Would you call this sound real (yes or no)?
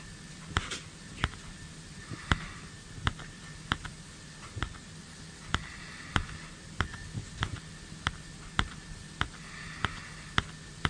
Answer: yes